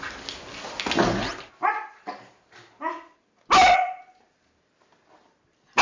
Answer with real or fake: real